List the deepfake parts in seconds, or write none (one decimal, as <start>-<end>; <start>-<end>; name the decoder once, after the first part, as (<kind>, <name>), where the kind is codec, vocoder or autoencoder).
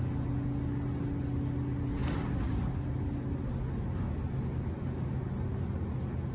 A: none